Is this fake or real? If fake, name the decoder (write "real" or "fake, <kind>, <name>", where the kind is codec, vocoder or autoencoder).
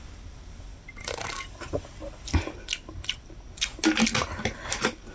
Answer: real